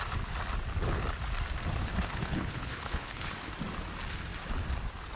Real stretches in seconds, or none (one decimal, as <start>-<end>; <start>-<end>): 0.0-1.9; 3.3-5.2